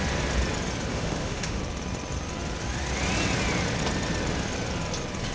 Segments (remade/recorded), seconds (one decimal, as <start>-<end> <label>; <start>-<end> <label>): 0.0-0.9 recorded; 0.9-1.6 remade; 1.6-5.3 recorded